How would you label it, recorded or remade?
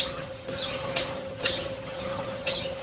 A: remade